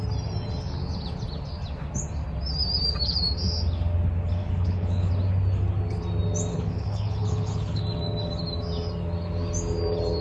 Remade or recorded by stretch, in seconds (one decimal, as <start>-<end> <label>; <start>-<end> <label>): 0.0-4.4 recorded; 4.4-5.1 remade; 5.1-6.5 recorded; 6.5-7.8 remade; 7.8-10.2 recorded